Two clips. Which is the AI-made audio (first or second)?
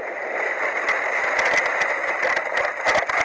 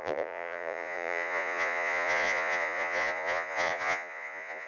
second